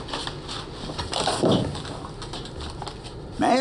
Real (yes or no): yes